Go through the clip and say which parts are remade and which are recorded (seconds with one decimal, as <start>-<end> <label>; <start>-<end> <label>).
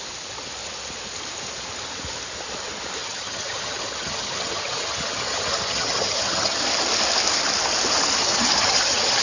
0.0-3.0 recorded; 3.0-6.6 remade; 6.6-8.2 recorded; 8.2-9.2 remade